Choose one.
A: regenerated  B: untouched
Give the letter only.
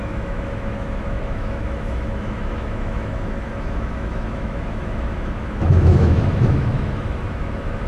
A